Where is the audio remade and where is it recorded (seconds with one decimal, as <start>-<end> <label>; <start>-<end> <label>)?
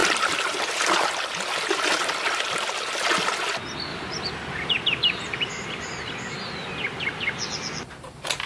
0.0-8.5 recorded